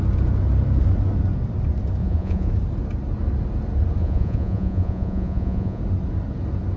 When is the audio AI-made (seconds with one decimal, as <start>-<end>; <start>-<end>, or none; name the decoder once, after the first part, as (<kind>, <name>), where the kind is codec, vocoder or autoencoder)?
2.0-2.5 (vocoder, Vocos); 4.0-5.8